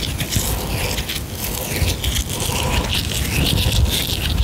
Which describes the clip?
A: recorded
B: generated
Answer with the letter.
A